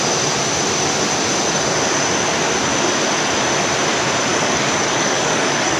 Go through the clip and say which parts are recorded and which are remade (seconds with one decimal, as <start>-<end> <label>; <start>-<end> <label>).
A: 0.0-4.3 recorded; 4.3-5.8 remade